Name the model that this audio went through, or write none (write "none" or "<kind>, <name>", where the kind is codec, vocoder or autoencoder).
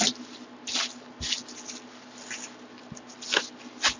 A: none